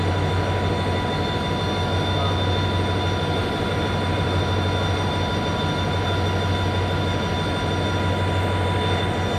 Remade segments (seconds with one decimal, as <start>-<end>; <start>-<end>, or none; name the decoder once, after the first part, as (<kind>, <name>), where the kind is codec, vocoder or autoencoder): 3.4-4.4 (vocoder, BigVGAN v2)